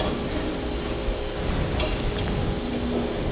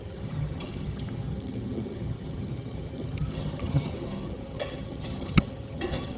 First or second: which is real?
first